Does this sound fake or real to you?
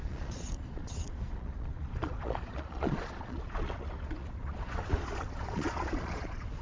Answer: fake